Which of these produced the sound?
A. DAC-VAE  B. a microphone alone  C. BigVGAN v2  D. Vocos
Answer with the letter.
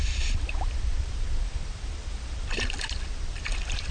C